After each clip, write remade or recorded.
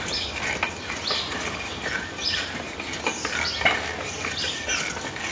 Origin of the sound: recorded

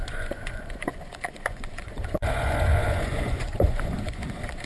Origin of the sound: remade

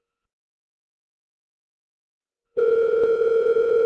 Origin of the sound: remade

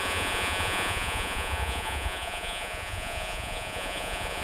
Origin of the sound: remade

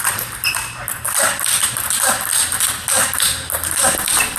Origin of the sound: recorded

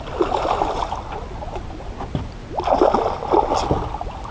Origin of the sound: recorded